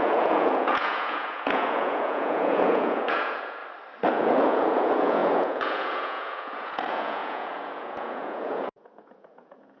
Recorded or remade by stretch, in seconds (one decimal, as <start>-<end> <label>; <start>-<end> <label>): 0.0-3.6 remade; 3.6-4.1 recorded; 4.1-9.8 remade